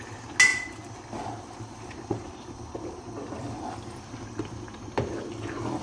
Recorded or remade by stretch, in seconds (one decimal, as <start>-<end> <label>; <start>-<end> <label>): 0.0-0.5 recorded; 0.5-3.7 remade; 3.7-5.8 recorded